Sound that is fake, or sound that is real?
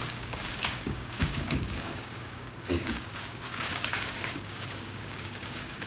fake